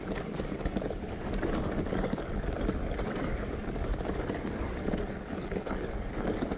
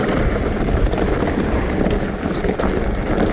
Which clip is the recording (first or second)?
second